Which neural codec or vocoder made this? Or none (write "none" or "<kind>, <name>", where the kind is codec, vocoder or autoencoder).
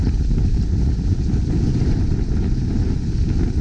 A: none